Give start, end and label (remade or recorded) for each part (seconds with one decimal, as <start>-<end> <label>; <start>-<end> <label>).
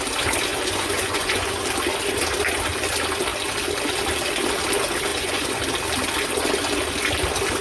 0.0-0.5 recorded; 0.5-1.5 remade; 1.5-5.1 recorded; 5.1-5.6 remade; 5.6-7.6 recorded